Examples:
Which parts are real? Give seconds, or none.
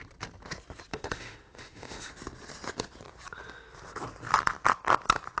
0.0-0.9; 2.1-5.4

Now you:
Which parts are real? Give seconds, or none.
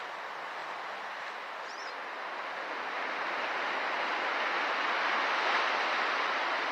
0.0-6.7